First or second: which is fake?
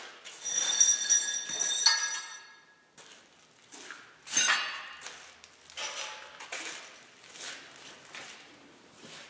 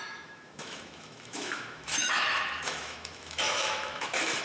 second